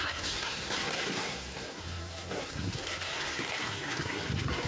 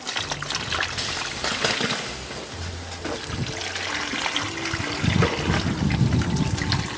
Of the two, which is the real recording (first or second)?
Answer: second